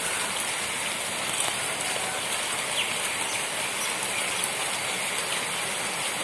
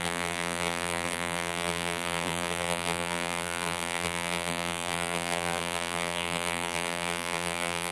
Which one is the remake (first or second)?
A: second